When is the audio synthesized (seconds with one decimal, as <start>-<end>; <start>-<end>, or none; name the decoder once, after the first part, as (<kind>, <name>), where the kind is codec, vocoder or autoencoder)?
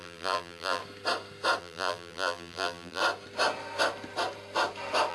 0.0-0.8 (vocoder, BigVGAN v2); 1.6-3.0